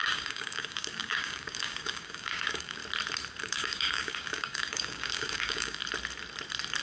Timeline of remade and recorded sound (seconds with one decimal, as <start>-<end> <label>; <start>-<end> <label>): 0.0-2.8 remade; 2.8-3.4 recorded; 3.4-5.8 remade; 5.8-6.8 recorded

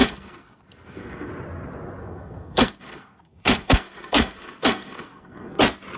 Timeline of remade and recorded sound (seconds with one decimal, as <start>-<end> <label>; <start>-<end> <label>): 0.0-1.3 remade; 1.3-2.0 recorded; 2.0-5.6 remade; 5.6-6.0 recorded

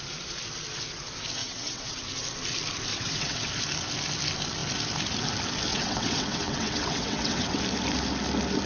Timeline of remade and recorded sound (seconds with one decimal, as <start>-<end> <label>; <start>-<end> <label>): 0.0-1.4 recorded; 1.4-2.1 remade; 2.1-2.9 recorded; 2.9-3.5 remade; 3.5-5.7 recorded; 5.7-7.6 remade; 7.6-8.7 recorded

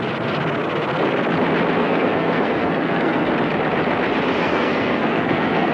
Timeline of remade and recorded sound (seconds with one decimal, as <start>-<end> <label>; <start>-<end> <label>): 0.0-1.8 recorded; 1.8-3.3 remade; 3.3-4.4 recorded; 4.4-5.7 remade

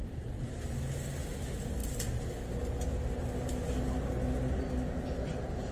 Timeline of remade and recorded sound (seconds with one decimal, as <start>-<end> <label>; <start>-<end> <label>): 0.0-1.8 remade; 1.8-5.2 recorded; 5.2-5.7 remade